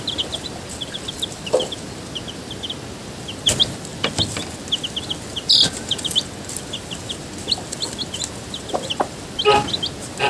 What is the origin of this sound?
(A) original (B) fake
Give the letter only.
A